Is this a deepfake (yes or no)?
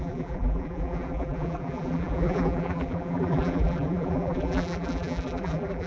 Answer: yes